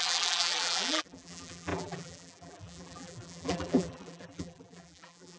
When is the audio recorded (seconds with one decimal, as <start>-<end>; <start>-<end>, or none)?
none